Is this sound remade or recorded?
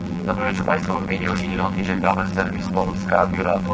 remade